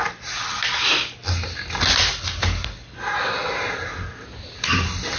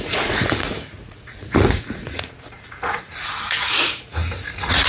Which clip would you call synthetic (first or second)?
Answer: second